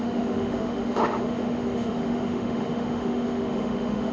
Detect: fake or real fake